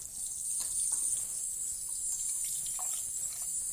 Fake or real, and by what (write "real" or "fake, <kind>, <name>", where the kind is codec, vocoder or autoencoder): real